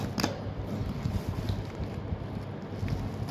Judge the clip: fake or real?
real